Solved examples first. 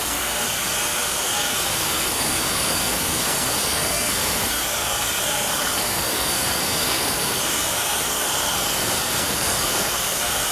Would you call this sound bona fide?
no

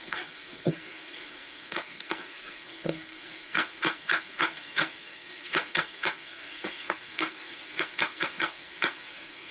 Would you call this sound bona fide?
no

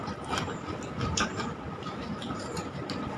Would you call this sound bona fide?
yes